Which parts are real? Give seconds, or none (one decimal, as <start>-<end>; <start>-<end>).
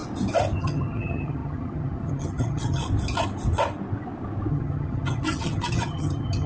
0.0-0.6; 2.8-4.5